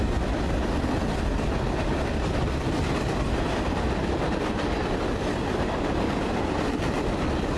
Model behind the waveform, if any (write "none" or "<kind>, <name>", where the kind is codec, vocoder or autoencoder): none